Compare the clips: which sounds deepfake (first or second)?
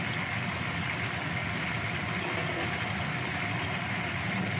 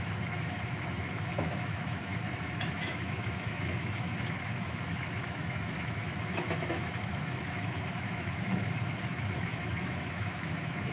second